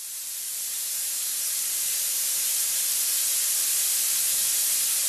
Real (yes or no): no